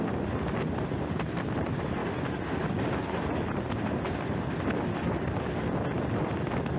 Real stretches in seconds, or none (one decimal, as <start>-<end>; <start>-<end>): 2.0-6.1